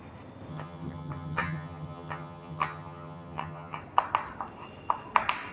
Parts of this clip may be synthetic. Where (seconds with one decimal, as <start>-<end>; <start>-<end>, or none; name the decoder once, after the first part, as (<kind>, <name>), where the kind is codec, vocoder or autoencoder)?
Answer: 0.5-3.8 (vocoder, HiFi-GAN)